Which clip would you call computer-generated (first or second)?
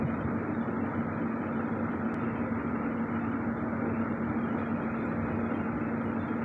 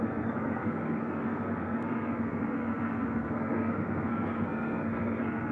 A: second